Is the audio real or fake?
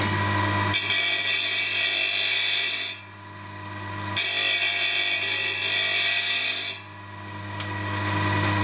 real